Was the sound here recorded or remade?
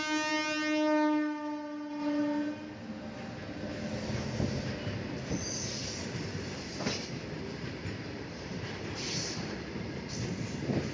recorded